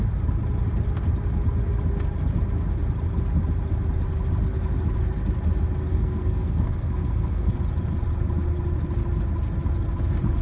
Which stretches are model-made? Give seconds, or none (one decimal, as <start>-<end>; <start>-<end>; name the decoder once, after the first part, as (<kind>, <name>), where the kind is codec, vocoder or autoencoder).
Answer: 5.9-7.6 (codec, SNAC)